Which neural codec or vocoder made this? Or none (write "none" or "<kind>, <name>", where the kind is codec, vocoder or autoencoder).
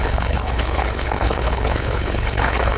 codec, HILCodec